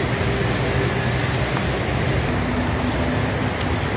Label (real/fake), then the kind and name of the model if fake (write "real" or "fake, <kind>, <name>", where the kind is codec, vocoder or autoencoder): real